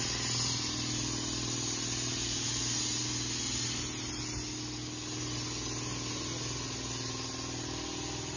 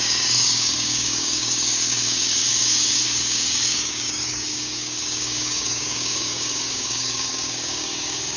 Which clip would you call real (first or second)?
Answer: first